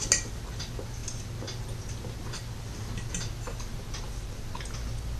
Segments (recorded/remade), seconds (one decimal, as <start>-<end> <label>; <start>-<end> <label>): 0.0-5.2 recorded